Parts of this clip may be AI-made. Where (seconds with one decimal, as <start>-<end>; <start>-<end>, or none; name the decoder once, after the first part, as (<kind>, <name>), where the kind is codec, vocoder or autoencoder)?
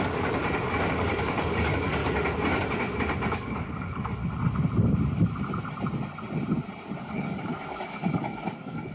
0.0-0.4 (codec, DAC); 0.9-2.0; 3.2-4.2; 7.0-8.9